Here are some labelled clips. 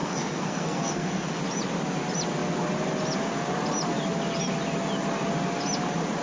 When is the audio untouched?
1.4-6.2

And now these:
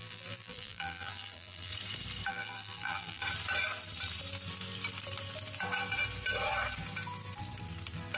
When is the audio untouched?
1.7-2.3; 3.2-8.2